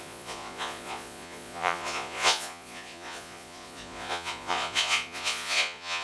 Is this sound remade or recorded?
remade